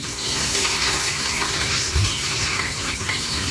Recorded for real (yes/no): no